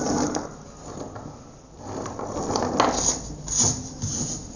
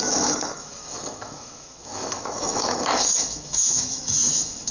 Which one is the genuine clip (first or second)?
first